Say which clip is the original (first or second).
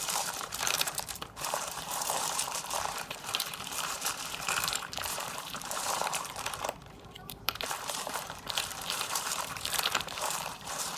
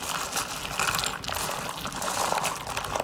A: second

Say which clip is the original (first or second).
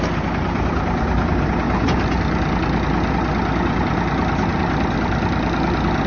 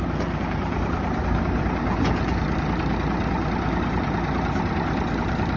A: first